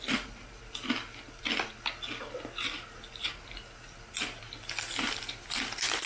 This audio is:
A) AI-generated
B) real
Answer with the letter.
B